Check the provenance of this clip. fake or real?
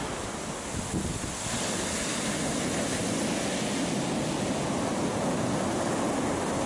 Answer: real